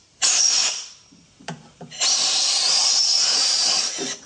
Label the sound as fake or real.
fake